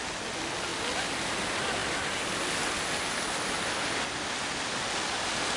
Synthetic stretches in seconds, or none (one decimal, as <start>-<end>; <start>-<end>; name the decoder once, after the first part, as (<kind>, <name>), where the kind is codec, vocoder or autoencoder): none